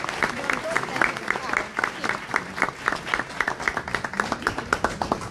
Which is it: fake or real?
real